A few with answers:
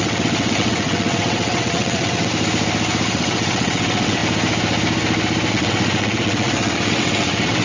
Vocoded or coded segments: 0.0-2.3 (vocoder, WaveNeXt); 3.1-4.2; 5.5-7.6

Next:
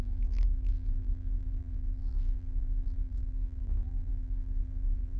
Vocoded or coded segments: 0.0-5.2 (vocoder, BigVGAN v2)

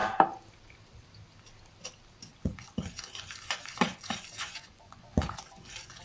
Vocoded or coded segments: 2.3-6.0 (vocoder, Vocos)

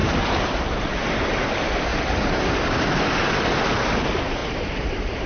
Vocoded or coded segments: 0.0-0.9 (vocoder, BigVGAN v2); 1.9-2.9; 4.4-5.3